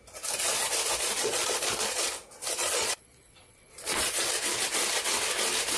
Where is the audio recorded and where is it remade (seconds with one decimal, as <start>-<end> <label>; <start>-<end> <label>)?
0.0-1.2 recorded; 1.2-2.1 remade; 2.1-2.6 recorded; 2.6-4.3 remade; 4.3-5.8 recorded